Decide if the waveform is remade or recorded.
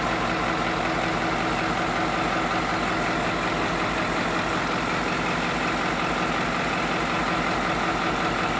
recorded